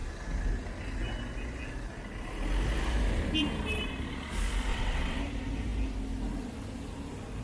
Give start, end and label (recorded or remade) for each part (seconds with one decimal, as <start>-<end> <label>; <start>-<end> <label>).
0.0-4.7 recorded; 4.7-5.2 remade; 5.2-7.4 recorded